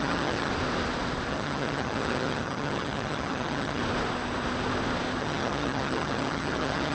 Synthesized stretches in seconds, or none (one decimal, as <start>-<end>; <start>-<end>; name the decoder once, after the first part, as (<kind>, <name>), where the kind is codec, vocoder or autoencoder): 0.0-0.5 (vocoder, HiFi-GAN); 1.3-3.8; 5.2-6.9